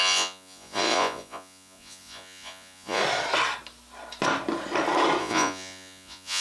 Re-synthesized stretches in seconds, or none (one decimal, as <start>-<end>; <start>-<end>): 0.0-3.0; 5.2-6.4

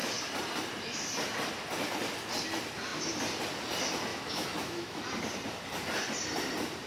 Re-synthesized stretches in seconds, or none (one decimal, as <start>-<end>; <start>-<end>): 4.1-5.0

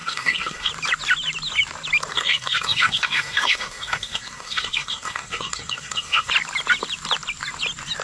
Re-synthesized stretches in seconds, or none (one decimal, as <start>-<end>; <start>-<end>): 0.0-0.7; 2.1-6.3

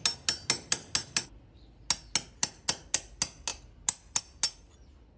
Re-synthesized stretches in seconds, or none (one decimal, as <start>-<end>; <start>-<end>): none